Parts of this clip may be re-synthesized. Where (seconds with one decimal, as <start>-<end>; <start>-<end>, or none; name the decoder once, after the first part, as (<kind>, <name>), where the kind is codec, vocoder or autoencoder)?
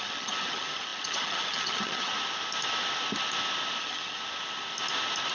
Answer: 0.0-2.1 (vocoder, HiFi-GAN); 3.8-4.2